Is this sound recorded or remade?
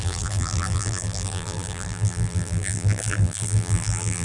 remade